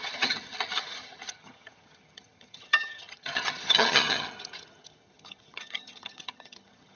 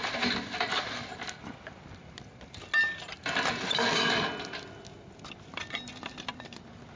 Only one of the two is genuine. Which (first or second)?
second